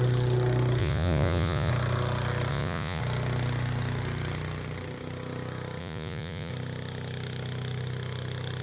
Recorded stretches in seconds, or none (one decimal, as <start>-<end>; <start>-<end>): 0.0-0.8; 1.7-2.5; 3.0-5.8; 6.5-8.6